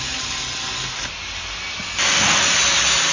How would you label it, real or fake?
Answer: real